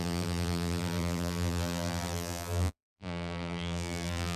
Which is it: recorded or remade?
remade